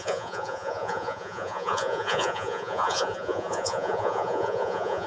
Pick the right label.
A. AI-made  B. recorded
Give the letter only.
A